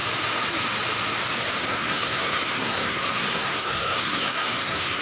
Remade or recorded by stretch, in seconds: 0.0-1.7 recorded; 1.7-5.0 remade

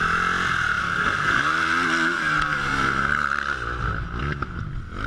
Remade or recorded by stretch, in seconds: 0.0-0.8 recorded; 0.8-1.4 remade; 1.4-5.1 recorded

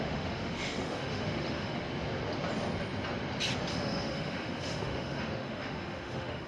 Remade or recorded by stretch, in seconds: 0.0-1.8 remade; 1.8-3.7 recorded; 3.7-6.5 remade

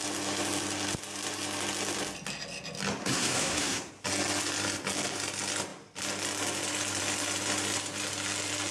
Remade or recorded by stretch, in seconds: 0.0-3.0 recorded; 3.0-3.9 remade; 3.9-8.7 recorded

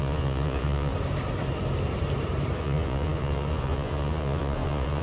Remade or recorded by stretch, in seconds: 0.0-0.9 remade; 0.9-2.6 recorded; 2.6-5.0 remade